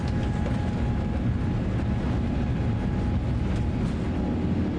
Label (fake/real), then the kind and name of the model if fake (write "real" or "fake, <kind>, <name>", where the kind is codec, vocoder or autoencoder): real